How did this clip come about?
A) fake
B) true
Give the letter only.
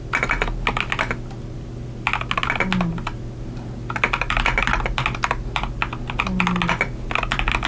B